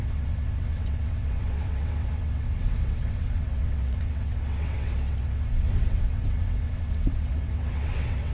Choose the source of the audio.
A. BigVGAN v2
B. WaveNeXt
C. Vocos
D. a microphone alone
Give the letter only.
B